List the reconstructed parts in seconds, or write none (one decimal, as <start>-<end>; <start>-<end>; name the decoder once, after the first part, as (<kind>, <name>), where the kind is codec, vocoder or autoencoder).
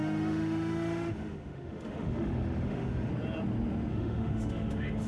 0.0-3.1 (autoencoder, DAC-VAE); 3.9-5.1